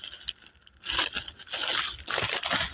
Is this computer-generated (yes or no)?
no